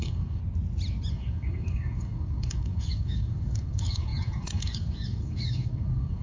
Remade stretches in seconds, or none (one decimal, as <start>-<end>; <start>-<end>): 0.0-0.4; 1.1-6.2